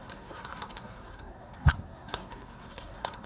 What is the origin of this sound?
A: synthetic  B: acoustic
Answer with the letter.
A